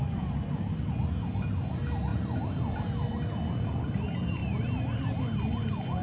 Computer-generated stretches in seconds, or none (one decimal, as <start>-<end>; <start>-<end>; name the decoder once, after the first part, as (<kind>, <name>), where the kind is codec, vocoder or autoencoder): none